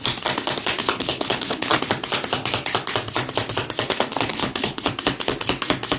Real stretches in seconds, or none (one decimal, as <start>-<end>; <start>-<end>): 0.0-0.8; 1.8-4.3; 4.9-6.0